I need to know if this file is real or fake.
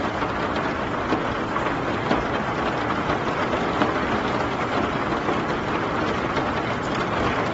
real